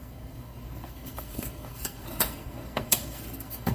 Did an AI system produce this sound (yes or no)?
yes